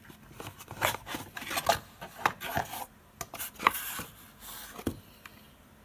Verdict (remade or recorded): recorded